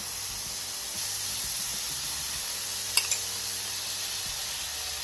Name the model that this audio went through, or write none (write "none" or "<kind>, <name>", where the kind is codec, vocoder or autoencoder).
vocoder, BigVGAN v2